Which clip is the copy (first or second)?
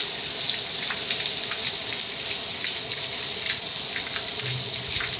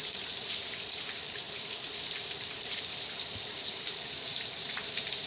second